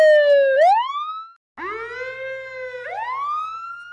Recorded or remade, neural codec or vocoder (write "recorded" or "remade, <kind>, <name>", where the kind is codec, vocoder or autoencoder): recorded